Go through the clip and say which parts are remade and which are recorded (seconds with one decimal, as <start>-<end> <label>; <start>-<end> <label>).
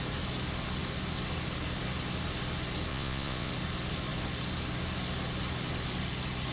0.0-2.9 recorded; 2.9-3.5 remade; 3.5-6.5 recorded